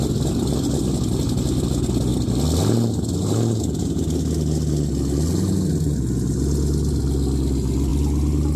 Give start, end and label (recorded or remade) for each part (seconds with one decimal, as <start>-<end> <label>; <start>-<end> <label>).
0.0-8.6 recorded